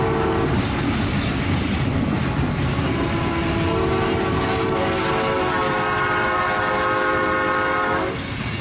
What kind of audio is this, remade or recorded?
recorded